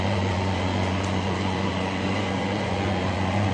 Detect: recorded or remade remade